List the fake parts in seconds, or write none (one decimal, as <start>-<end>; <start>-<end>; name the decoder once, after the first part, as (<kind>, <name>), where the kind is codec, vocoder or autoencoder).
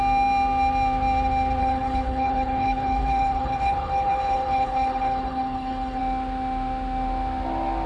1.6-6.0 (codec, HILCodec)